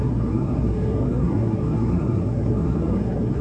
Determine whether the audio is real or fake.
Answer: fake